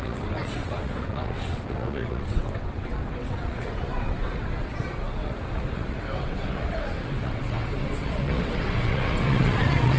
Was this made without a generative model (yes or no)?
no